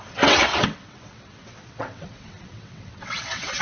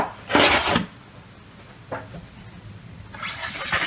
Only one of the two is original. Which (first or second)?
second